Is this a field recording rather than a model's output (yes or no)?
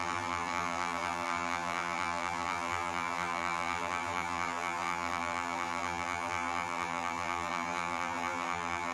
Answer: no